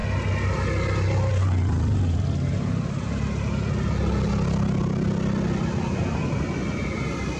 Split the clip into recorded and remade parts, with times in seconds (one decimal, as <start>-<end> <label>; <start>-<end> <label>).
0.0-7.4 recorded